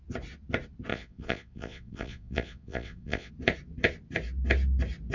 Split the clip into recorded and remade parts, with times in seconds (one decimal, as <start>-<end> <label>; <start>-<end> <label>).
0.0-0.9 recorded; 0.9-3.3 remade; 3.3-5.1 recorded